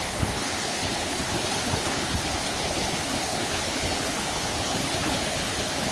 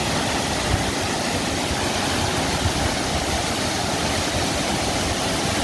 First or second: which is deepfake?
first